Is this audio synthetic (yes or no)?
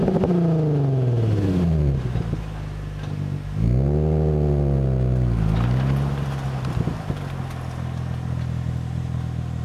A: no